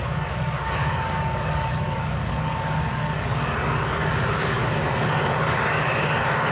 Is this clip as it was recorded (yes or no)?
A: no